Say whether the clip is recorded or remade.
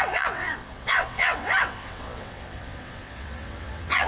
remade